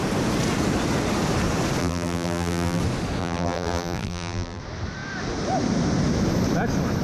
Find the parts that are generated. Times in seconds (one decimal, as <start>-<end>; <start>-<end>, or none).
1.8-2.8; 3.2-4.6